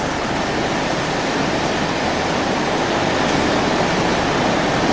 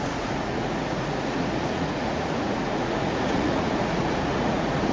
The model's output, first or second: second